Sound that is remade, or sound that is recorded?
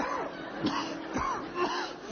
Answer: recorded